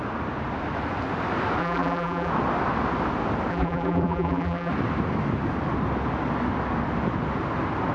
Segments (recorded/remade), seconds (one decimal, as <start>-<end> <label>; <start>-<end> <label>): 0.0-1.6 recorded; 1.6-2.3 remade; 2.3-3.5 recorded; 3.5-4.7 remade; 4.7-7.9 recorded